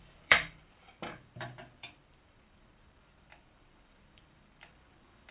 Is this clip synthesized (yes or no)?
yes